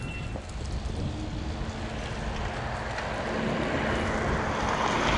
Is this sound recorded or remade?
recorded